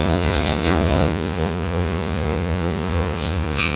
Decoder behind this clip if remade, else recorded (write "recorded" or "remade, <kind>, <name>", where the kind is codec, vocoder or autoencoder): remade, vocoder, Vocos